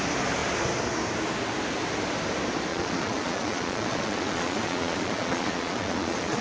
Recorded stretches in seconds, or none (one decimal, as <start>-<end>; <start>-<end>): 0.0-2.7